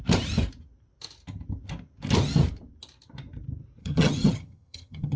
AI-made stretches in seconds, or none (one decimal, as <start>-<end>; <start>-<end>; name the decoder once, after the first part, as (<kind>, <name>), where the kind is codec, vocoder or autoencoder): 3.8-5.2 (vocoder, HiFi-GAN)